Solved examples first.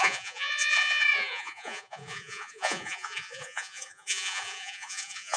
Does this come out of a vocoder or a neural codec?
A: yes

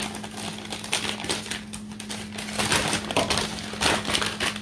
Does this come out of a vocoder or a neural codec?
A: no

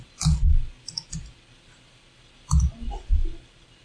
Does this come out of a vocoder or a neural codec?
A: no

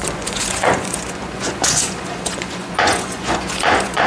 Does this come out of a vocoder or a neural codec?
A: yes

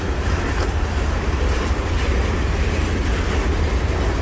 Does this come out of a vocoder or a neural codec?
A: no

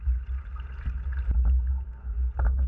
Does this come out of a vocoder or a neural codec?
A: no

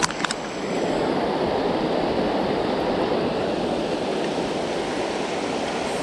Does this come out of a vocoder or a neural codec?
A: no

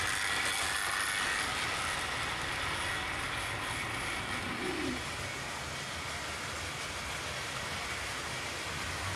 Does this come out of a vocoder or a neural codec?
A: no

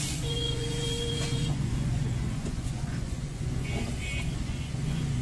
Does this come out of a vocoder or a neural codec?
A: yes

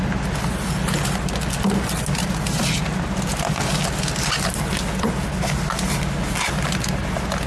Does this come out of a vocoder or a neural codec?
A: no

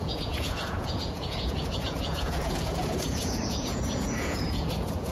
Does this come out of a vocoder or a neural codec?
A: yes